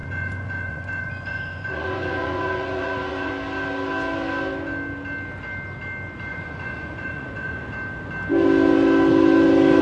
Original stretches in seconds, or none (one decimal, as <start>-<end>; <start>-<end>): 3.3-6.3; 7.7-9.8